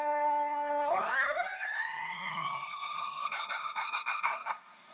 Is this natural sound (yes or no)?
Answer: no